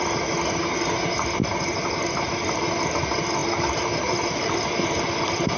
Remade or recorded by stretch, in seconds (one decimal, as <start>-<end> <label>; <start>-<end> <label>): 0.0-1.4 recorded; 1.4-2.5 remade; 2.5-3.4 recorded; 3.4-5.6 remade